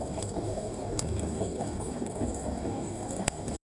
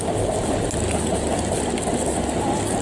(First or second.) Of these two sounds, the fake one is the first